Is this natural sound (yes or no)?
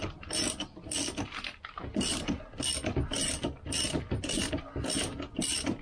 yes